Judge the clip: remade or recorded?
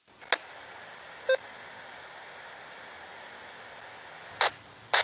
recorded